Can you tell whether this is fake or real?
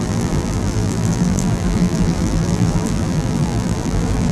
fake